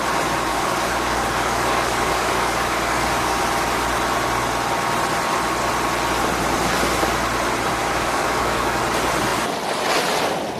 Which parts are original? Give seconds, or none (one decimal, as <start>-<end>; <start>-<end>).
0.0-0.5; 3.4-7.8; 8.8-10.6